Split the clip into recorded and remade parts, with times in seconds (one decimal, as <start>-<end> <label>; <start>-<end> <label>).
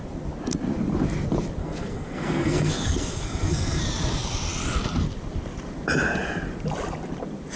0.0-1.6 recorded; 1.6-3.8 remade; 3.8-7.6 recorded